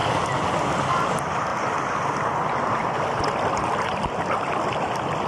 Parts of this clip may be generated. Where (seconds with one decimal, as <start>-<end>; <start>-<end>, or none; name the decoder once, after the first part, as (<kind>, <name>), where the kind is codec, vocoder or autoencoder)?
none

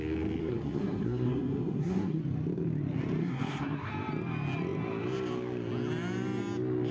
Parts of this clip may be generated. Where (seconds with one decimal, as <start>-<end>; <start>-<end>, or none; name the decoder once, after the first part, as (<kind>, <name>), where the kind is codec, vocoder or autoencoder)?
0.4-2.2 (codec, SNAC); 3.2-3.9

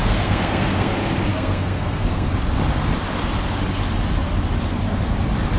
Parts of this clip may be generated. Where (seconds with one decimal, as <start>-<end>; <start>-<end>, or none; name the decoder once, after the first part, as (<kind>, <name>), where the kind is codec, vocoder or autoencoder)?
0.0-0.9 (codec, SNAC); 1.3-2.3

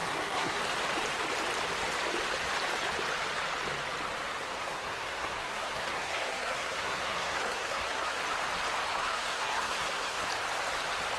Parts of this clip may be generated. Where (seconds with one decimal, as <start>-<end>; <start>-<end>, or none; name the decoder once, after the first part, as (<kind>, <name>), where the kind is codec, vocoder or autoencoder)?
0.0-0.6 (codec, SNAC); 4.6-8.2; 8.9-10.2

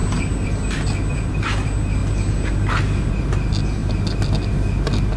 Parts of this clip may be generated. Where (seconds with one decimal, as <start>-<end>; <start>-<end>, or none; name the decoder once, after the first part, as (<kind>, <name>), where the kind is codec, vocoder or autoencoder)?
none

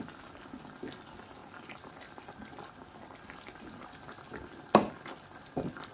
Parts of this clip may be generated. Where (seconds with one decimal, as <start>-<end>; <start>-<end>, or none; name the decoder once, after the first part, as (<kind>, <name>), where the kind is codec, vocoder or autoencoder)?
none

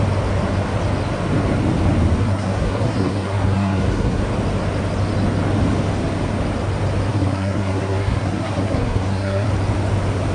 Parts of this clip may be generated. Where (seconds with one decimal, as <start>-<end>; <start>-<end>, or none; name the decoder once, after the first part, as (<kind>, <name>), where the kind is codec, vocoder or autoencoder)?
2.2-4.2 (codec, SNAC); 7.1-9.5

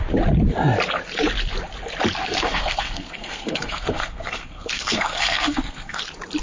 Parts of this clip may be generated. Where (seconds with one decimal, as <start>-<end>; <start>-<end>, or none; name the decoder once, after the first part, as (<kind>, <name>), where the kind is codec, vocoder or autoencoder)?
2.2-6.0 (codec, SNAC)